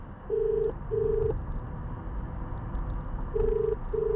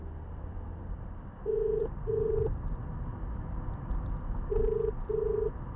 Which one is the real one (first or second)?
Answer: first